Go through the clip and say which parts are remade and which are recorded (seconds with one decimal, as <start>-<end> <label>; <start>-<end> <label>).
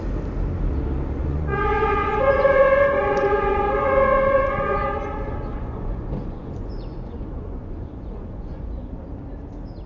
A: 0.0-1.2 recorded; 1.2-4.8 remade; 4.8-5.5 recorded; 5.5-9.0 remade; 9.0-9.9 recorded